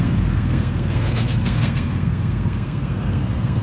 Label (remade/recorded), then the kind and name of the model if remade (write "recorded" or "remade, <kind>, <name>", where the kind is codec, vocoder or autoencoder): remade, codec, SNAC